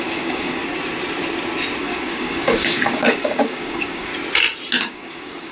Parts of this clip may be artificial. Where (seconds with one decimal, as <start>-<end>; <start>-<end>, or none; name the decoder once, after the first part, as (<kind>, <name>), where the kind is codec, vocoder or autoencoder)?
0.0-0.6 (codec, DAC); 1.8-4.1; 4.8-5.5